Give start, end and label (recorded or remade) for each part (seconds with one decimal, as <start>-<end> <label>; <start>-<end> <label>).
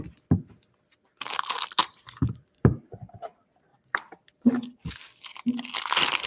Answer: 0.0-1.8 recorded; 1.8-2.8 remade; 2.8-3.7 recorded; 3.7-4.9 remade; 4.9-6.3 recorded